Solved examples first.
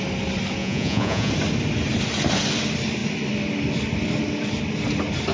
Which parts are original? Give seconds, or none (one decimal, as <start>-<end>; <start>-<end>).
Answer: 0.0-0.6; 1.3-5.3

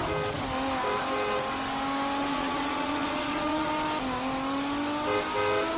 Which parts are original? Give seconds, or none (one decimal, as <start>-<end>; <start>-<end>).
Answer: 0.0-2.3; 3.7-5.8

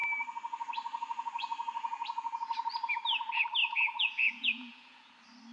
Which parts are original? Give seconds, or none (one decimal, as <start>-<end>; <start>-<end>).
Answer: 0.0-3.6; 5.1-5.5

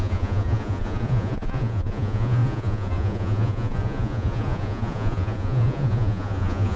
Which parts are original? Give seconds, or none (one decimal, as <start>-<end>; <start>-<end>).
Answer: none

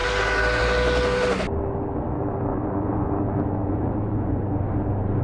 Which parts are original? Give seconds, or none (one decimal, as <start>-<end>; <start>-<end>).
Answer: 0.0-2.5; 3.1-3.6; 4.4-5.2